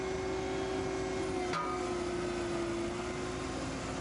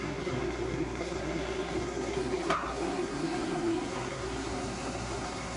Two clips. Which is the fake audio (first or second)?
second